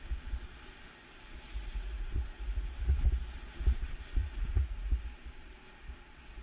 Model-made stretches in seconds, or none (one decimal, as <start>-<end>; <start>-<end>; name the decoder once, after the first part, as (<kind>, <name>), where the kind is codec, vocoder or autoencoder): 1.5-3.0 (vocoder, Vocos); 4.2-4.9